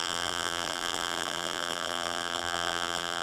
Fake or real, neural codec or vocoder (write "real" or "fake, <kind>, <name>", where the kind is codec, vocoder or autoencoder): fake, vocoder, BigVGAN v2